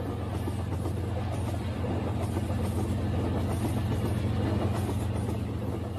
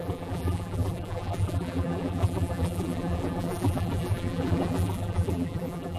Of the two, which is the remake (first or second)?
second